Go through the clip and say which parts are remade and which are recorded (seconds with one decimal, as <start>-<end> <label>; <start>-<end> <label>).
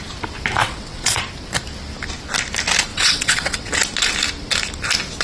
0.0-0.6 recorded; 0.6-1.2 remade; 1.2-2.9 recorded; 2.9-3.7 remade; 3.7-5.2 recorded